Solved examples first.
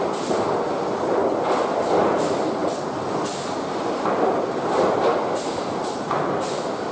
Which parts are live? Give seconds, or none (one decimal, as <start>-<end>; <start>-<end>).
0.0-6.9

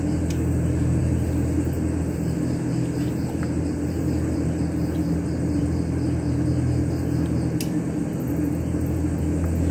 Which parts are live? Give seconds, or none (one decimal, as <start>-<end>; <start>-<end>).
0.0-9.7

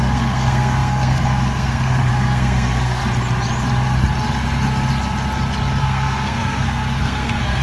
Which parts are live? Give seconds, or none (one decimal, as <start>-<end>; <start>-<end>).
3.0-5.8